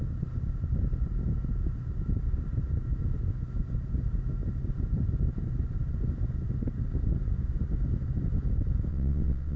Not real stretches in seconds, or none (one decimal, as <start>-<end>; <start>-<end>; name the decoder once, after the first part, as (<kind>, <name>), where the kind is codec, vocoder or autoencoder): 8.9-9.6 (vocoder, WaveNeXt)